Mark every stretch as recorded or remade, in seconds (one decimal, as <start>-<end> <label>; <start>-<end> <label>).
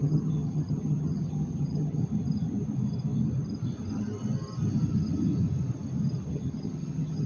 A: 0.0-2.0 remade; 2.0-6.3 recorded; 6.3-7.3 remade